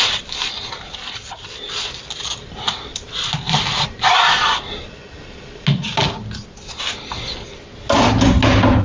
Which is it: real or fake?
real